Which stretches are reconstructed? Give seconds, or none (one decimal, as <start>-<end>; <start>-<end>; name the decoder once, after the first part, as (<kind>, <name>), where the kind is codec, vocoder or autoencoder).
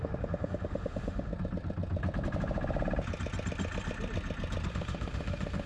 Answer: 0.0-1.3 (autoencoder, DAC-VAE); 4.7-5.7